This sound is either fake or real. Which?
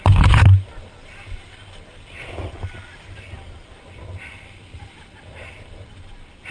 real